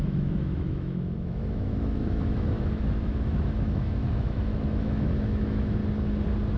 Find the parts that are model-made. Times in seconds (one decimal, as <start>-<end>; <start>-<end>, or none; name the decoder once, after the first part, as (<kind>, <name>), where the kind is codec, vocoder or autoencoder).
0.0-5.8 (autoencoder, DAC-VAE)